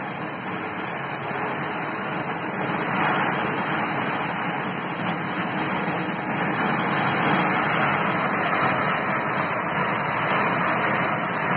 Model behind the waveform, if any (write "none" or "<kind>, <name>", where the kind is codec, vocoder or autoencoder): none